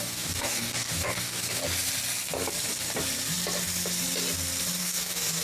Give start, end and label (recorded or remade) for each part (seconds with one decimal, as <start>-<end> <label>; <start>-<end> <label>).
0.0-1.6 remade; 1.6-4.8 recorded; 4.8-5.4 remade